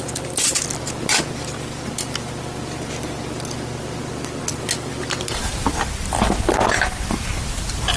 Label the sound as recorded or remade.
recorded